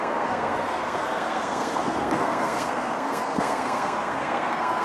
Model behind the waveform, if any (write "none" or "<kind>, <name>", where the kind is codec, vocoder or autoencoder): codec, SNAC